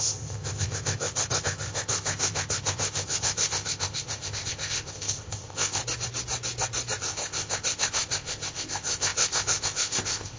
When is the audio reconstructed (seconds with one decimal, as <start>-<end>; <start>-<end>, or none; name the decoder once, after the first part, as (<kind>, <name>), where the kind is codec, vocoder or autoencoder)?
0.0-5.8 (codec, ZipCodec); 7.0-10.4